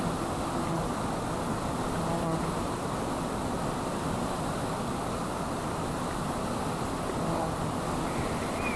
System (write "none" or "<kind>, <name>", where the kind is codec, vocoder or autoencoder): none